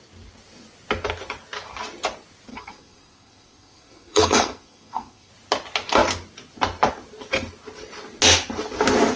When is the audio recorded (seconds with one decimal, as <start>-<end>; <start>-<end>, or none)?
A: 0.0-2.5; 5.3-9.2